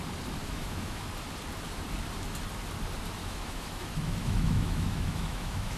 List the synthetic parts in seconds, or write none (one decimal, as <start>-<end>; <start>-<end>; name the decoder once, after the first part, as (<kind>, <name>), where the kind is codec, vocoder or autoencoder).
0.4-1.1 (autoencoder, DAC-VAE); 3.2-5.8